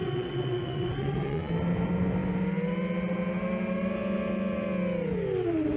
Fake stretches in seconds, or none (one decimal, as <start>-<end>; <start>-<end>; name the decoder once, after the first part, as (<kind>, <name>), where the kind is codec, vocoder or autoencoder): 0.0-1.5 (vocoder, WaveNeXt)